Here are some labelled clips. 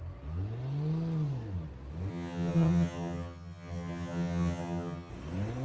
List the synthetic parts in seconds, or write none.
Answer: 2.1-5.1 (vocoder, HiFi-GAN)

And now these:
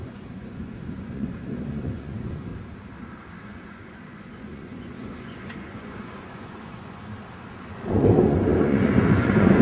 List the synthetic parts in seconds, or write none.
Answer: 0.0-2.5 (vocoder, Vocos); 3.4-7.1; 7.7-9.6

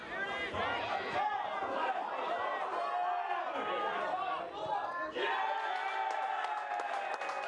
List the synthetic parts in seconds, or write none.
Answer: none